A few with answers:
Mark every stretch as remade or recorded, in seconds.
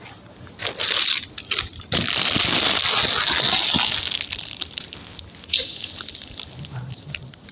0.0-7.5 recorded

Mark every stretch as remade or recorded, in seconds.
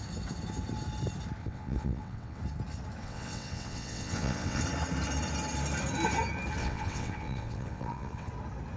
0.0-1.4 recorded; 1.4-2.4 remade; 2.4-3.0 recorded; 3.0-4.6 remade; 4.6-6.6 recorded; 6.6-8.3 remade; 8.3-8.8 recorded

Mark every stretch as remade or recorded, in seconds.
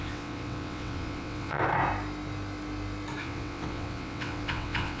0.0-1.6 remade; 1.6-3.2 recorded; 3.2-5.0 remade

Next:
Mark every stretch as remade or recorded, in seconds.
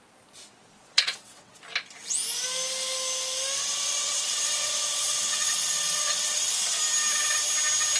0.0-0.8 recorded; 0.8-1.5 remade; 1.5-3.6 recorded; 3.6-6.8 remade; 6.8-8.0 recorded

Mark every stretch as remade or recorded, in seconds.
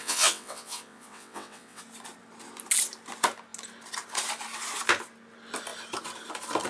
0.0-1.8 remade; 1.8-6.7 recorded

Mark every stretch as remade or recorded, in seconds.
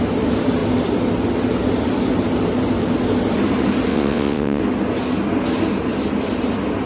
0.0-3.9 recorded; 3.9-4.6 remade; 4.6-6.9 recorded